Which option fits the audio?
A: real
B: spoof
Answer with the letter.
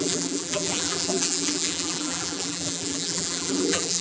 B